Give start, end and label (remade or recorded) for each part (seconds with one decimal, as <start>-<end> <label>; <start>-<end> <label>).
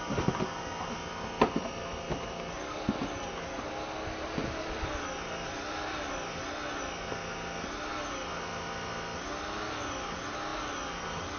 0.0-4.4 recorded; 4.4-6.4 remade; 6.4-11.4 recorded